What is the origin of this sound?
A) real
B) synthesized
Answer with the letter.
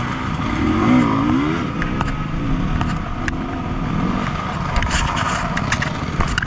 A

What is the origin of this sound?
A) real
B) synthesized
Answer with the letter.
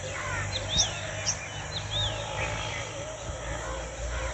A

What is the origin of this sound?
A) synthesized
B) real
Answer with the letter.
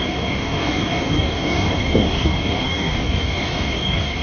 A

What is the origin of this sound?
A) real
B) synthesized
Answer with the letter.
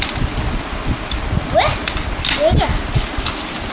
A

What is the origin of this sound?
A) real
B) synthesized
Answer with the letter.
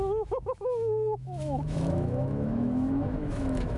B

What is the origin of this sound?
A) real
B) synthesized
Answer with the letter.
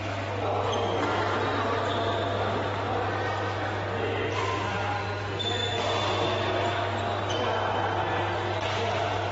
A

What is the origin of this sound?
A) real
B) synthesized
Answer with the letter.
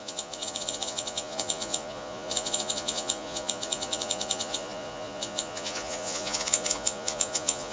B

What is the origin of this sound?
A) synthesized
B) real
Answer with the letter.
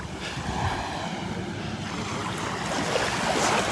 B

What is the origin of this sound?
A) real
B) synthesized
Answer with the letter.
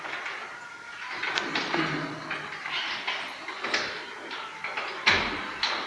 A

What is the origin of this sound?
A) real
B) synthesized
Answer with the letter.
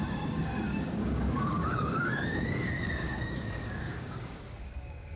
B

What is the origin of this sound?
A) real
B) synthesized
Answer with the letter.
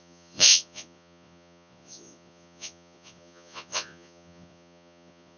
B